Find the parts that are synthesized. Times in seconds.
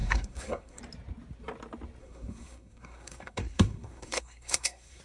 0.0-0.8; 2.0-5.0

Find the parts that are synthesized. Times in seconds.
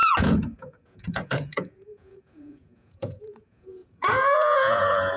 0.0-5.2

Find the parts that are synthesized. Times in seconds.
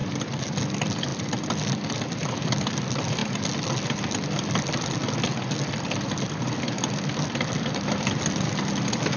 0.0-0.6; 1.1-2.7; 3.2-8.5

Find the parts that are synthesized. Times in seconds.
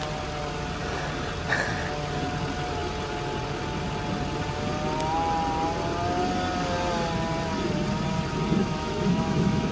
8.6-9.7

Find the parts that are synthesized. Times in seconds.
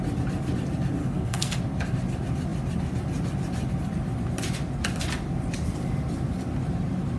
1.0-1.6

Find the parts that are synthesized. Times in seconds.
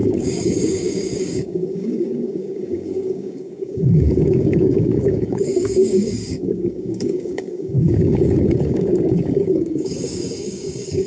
0.0-11.1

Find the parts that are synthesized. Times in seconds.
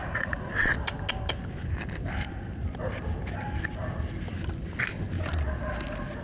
0.0-0.5